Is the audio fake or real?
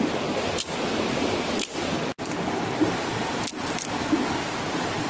real